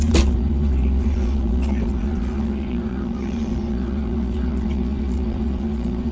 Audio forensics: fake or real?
fake